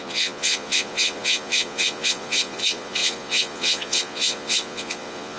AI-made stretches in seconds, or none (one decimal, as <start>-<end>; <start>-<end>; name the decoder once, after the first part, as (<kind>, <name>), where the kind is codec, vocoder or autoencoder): 0.0-5.4 (vocoder, Vocos)